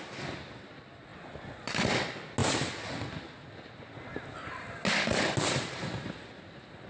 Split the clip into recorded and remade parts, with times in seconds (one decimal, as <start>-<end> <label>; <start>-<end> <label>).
0.0-6.9 recorded